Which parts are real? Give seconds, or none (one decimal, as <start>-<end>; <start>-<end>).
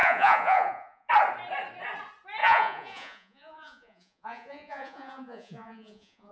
1.1-2.4